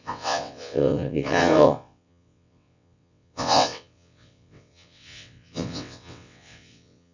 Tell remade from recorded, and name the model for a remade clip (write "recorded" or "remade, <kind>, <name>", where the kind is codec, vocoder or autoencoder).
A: remade, vocoder, WaveNeXt